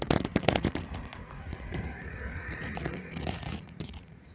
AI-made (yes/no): yes